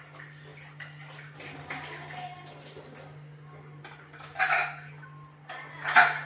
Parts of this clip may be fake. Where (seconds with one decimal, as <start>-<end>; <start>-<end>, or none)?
none